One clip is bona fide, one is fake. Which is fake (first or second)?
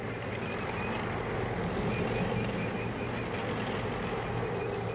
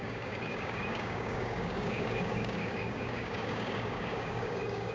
second